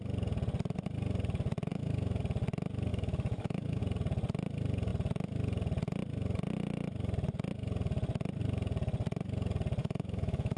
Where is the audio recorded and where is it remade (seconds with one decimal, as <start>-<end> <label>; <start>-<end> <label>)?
0.0-1.7 recorded; 1.7-2.2 remade; 2.2-2.9 recorded; 2.9-3.8 remade; 3.8-9.8 recorded; 9.8-10.6 remade